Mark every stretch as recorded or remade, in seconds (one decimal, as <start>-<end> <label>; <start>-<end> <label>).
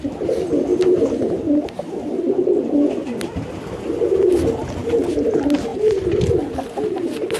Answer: 0.0-4.8 recorded; 4.8-5.3 remade; 5.3-7.4 recorded